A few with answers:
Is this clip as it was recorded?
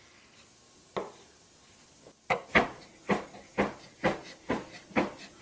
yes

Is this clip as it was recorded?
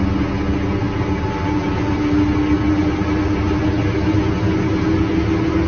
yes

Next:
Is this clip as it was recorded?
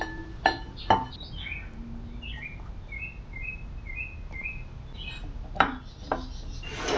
yes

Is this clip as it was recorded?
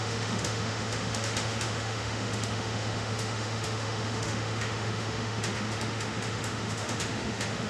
no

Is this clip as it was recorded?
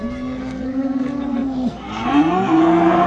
no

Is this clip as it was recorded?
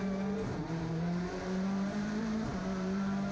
no